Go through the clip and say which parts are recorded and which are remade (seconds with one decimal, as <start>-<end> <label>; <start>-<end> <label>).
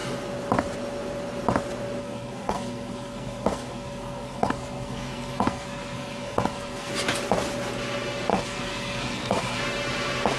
0.0-2.0 recorded; 2.0-6.9 remade; 6.9-8.3 recorded; 8.3-9.6 remade; 9.6-10.4 recorded